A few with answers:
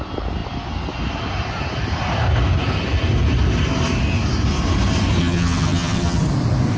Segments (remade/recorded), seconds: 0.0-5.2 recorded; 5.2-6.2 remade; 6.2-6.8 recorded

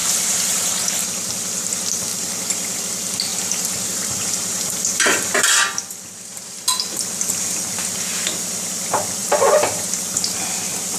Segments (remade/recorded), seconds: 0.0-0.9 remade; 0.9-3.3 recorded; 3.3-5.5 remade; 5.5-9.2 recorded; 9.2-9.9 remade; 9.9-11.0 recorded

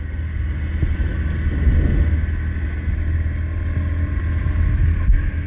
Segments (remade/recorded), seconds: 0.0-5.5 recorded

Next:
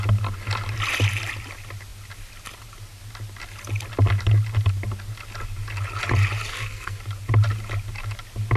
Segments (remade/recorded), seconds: 0.0-6.5 recorded; 6.5-7.0 remade; 7.0-8.6 recorded

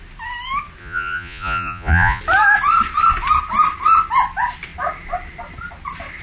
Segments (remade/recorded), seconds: 0.0-0.8 recorded; 0.8-2.2 remade; 2.2-6.2 recorded

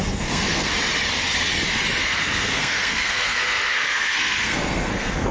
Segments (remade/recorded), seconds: 0.0-0.7 remade; 0.7-2.0 recorded; 2.0-5.3 remade

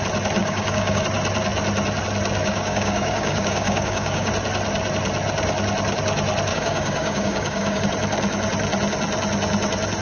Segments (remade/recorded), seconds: 0.0-0.4 recorded; 0.4-1.0 remade; 1.0-2.4 recorded; 2.4-4.3 remade; 4.3-6.5 recorded; 6.5-7.8 remade; 7.8-10.0 recorded

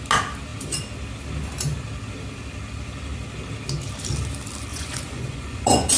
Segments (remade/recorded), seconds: 0.0-4.7 recorded; 4.7-6.0 remade